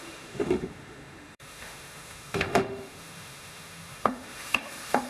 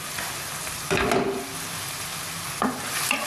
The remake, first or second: first